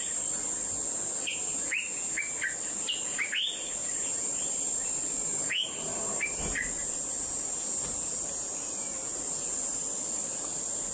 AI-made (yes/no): no